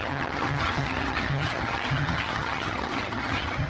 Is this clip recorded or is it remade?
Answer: remade